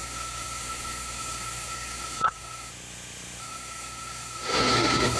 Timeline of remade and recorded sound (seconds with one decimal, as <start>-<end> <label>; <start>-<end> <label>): 0.0-2.7 remade; 2.7-3.4 recorded; 3.4-5.2 remade